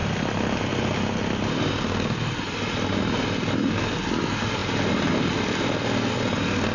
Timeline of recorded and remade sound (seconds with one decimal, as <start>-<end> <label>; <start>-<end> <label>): 0.0-6.7 recorded